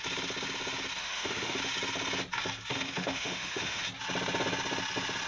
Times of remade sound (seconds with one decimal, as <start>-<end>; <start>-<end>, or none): 1.0-1.6; 2.7-3.8